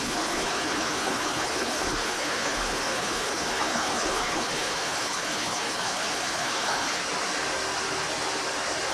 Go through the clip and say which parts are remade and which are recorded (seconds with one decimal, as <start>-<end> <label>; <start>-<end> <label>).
0.0-7.0 remade; 7.0-8.9 recorded